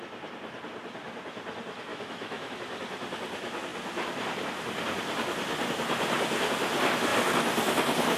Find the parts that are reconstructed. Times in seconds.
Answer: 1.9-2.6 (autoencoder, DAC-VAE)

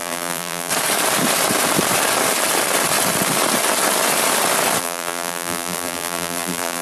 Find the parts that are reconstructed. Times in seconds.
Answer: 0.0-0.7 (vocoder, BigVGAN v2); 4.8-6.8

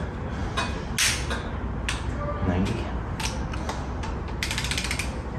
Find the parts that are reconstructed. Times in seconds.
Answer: none